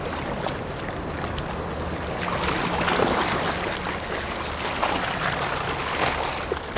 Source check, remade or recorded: recorded